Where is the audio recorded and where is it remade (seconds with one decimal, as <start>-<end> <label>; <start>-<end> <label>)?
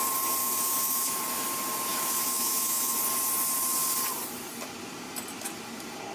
0.0-0.4 recorded; 0.4-1.2 remade; 1.2-1.9 recorded; 1.9-2.9 remade; 2.9-6.1 recorded